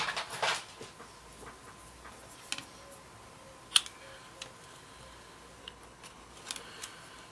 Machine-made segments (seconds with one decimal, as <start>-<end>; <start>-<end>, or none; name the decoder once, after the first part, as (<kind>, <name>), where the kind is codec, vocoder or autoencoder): 5.6-6.3 (codec, HILCodec)